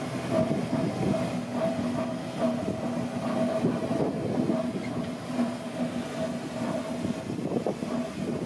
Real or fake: real